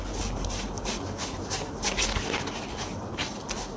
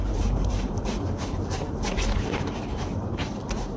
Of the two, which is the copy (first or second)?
second